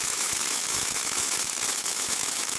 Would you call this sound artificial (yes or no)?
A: yes